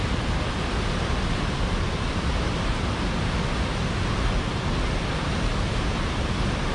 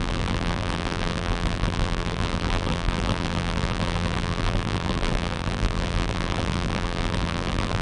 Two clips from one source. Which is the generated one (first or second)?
second